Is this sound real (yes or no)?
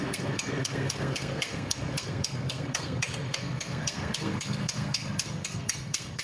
no